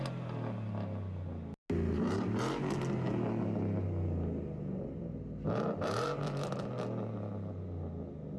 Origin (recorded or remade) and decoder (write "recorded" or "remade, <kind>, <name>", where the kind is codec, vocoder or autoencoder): recorded